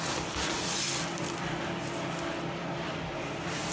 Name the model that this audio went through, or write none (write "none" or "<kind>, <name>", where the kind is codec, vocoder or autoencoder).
none